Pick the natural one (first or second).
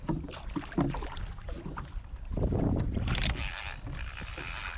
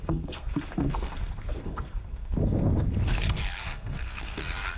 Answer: first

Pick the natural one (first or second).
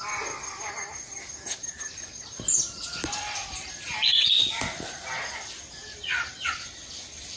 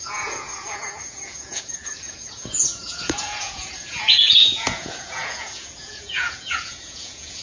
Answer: first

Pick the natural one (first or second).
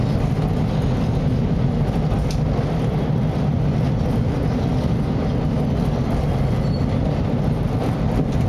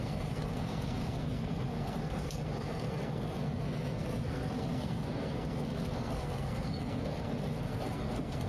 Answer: first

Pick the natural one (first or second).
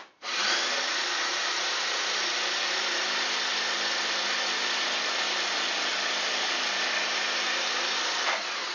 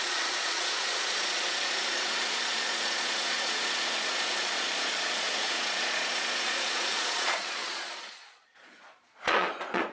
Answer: first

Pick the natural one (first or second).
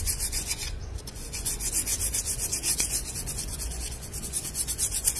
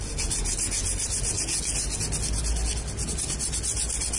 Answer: second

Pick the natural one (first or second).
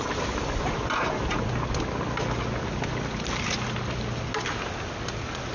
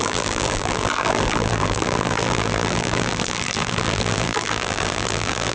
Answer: first